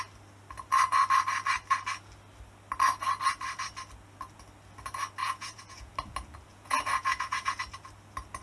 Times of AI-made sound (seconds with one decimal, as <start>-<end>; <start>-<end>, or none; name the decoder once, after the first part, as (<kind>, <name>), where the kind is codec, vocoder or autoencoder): 5.2-5.9 (vocoder, Vocos); 6.5-7.6